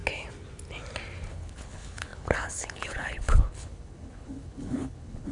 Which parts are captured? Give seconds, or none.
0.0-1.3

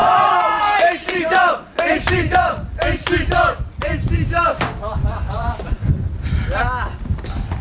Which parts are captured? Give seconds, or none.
0.6-4.9; 6.1-7.6